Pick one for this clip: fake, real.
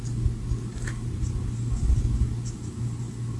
real